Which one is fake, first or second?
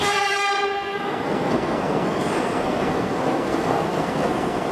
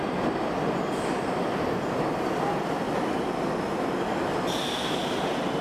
first